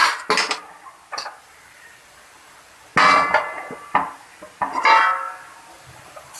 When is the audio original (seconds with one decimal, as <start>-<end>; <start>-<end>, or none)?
0.0-1.4; 2.9-5.7